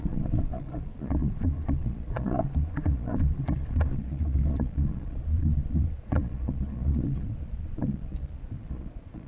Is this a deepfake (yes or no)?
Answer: yes